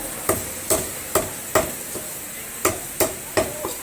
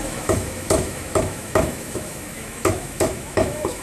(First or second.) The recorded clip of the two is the first